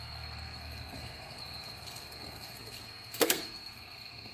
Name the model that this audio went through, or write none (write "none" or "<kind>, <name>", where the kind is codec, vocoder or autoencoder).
codec, SNAC